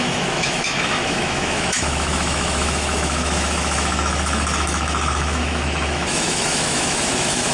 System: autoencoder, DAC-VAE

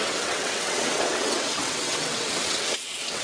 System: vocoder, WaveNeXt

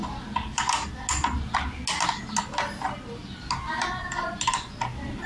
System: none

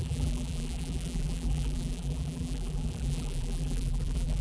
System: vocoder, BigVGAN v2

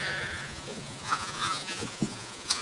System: vocoder, Vocos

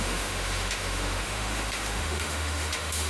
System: autoencoder, DAC-VAE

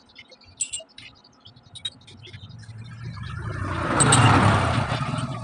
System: none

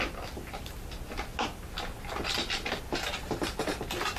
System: none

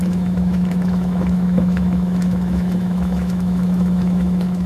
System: autoencoder, DAC-VAE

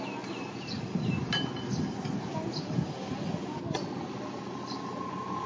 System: none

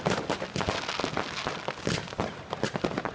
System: none